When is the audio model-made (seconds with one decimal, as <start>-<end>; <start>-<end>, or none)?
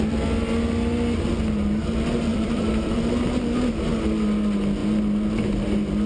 2.3-3.4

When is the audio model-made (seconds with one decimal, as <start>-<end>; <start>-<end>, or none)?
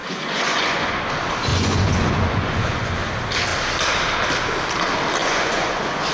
0.0-1.0; 1.5-3.0; 5.2-6.1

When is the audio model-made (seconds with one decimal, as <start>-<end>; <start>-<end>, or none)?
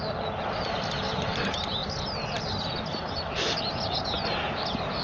none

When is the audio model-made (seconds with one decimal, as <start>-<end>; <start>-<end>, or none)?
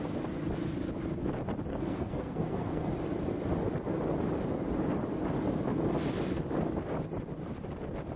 1.7-2.9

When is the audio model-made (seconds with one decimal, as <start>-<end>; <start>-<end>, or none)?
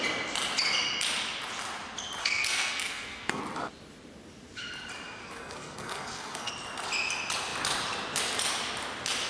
2.2-3.4; 5.2-6.5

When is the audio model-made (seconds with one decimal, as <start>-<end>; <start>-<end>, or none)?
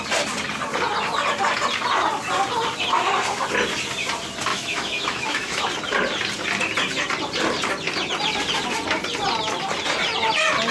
4.5-5.7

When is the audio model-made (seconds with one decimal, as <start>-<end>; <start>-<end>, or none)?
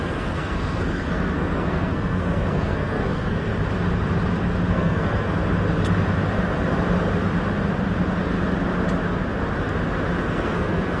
0.0-3.5; 4.7-5.4; 10.2-11.0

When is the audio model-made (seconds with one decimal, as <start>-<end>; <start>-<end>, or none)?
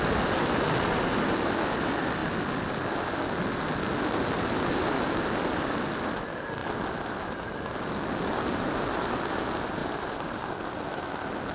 2.2-2.7; 9.8-10.7